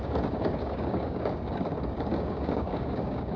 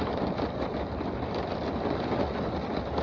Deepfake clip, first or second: first